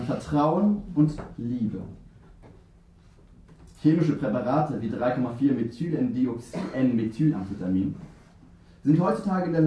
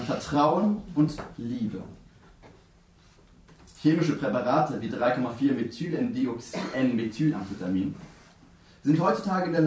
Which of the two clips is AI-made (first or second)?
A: second